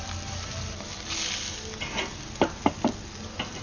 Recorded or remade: recorded